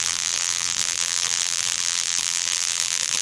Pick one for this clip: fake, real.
fake